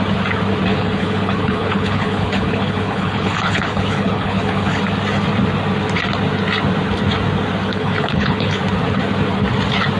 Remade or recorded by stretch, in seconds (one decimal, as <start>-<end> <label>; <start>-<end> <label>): 0.0-0.7 recorded; 0.7-4.8 remade; 4.8-7.7 recorded; 7.7-8.6 remade; 8.6-10.0 recorded